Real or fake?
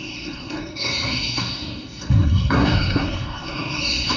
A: fake